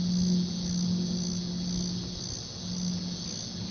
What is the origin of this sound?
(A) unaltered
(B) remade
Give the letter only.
A